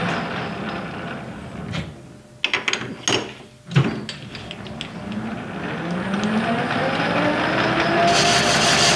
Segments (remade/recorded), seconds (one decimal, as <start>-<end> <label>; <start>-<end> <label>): 0.0-9.0 recorded